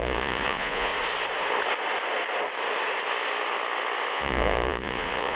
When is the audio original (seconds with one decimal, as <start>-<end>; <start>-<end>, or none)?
0.9-4.1